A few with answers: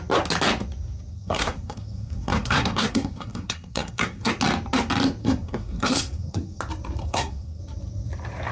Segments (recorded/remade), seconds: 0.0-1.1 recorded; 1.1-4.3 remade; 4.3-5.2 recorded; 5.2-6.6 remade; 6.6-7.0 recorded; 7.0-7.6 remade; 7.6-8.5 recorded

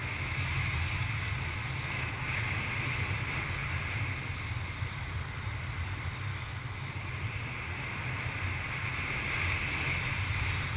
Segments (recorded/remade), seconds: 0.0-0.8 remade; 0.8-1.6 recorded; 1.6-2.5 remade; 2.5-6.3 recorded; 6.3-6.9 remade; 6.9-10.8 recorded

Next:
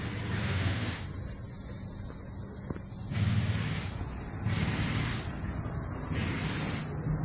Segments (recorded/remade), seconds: 0.0-0.4 recorded; 0.4-1.0 remade; 1.0-7.2 recorded

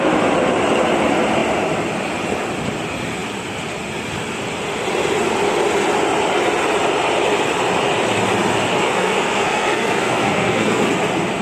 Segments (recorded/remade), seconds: 0.0-8.7 recorded; 8.7-10.9 remade; 10.9-11.4 recorded